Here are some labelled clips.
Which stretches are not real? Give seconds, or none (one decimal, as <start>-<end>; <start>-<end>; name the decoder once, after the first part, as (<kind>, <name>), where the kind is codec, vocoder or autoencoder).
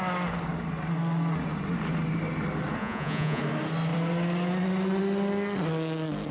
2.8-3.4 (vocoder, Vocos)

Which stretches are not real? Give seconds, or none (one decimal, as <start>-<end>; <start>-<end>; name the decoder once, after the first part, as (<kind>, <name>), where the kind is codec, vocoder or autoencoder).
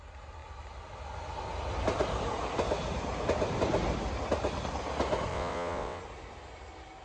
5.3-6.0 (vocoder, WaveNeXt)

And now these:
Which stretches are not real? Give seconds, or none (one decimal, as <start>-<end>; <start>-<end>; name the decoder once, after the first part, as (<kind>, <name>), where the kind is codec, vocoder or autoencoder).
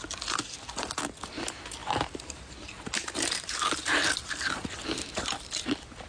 1.8-4.0 (vocoder, BigVGAN v2)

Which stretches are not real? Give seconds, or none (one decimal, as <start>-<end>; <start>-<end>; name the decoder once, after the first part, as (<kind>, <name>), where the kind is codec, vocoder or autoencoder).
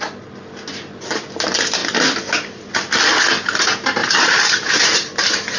4.0-5.6 (vocoder, BigVGAN v2)